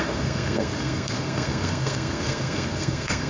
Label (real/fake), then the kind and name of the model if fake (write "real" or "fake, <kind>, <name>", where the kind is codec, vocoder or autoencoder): fake, codec, SNAC